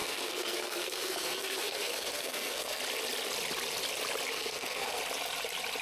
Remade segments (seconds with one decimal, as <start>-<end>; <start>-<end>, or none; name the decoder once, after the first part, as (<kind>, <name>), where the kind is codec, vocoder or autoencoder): 0.0-2.8 (codec, SNAC); 4.3-5.0